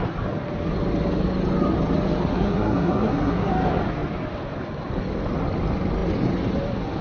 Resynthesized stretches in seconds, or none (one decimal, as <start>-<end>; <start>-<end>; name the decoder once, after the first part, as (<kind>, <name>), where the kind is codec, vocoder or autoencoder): 2.3-3.5 (codec, SNAC)